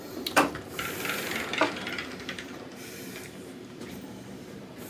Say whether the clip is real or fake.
fake